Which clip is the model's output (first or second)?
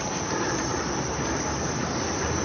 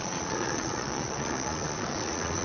second